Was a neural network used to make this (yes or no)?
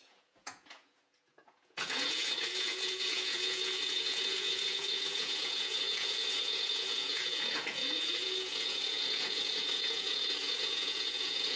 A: yes